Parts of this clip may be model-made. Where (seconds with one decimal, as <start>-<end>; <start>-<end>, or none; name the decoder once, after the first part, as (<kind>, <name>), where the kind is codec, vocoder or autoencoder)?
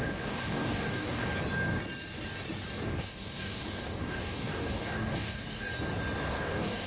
0.0-1.3 (codec, DAC); 3.0-5.7; 6.3-6.9